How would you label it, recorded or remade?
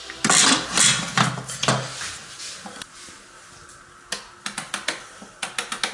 recorded